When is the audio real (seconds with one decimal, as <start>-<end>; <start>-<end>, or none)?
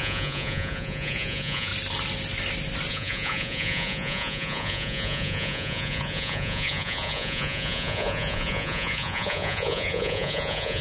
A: 1.7-2.9